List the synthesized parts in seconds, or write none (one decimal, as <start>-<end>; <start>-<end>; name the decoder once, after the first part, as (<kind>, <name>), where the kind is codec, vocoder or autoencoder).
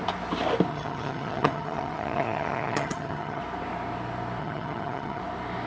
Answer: 0.7-3.4 (vocoder, HiFi-GAN); 4.4-5.2